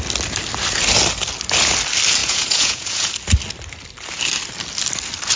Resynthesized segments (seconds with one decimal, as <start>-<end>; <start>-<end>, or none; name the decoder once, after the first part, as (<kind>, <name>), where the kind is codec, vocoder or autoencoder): 2.2-3.1 (vocoder, Vocos)